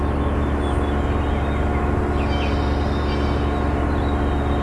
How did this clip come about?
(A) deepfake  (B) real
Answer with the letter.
B